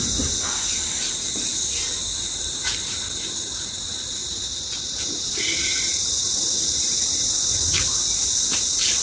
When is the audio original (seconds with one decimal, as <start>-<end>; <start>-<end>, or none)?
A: 0.0-9.0